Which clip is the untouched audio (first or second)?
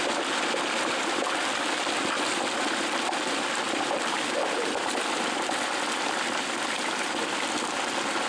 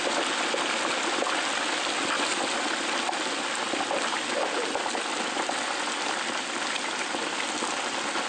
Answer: second